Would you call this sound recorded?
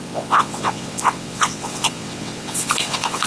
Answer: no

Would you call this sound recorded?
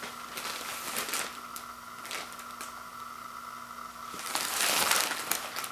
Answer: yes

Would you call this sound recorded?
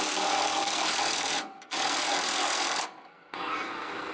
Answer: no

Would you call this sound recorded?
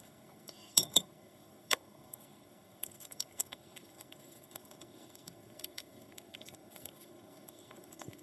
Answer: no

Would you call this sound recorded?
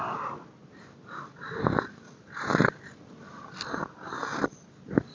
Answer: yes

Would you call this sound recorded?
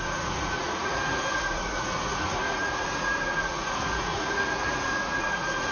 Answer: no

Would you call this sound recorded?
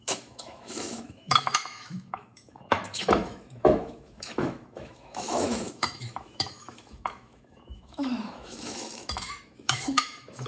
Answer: no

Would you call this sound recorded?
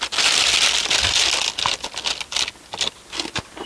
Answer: yes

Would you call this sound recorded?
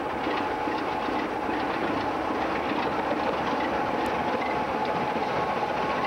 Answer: yes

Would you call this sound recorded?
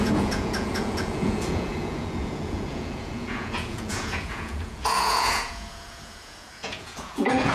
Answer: no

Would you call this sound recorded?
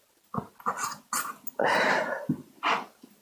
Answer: yes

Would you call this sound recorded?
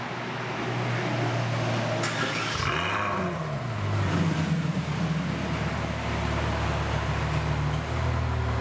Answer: yes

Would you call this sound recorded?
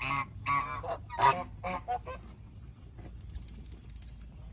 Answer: yes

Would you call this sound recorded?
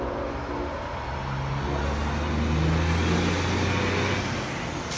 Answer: yes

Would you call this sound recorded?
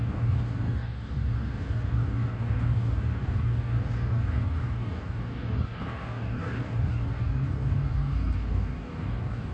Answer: no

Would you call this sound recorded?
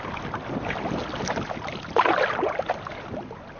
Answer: yes